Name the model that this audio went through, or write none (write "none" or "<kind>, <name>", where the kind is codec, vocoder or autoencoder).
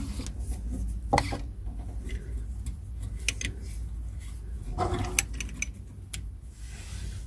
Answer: none